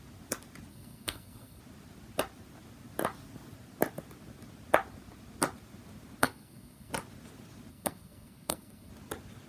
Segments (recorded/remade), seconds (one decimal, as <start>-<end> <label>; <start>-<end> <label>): 0.0-0.7 recorded; 0.7-1.6 remade; 1.6-6.2 recorded; 6.2-6.9 remade; 6.9-7.7 recorded; 7.7-8.9 remade; 8.9-9.5 recorded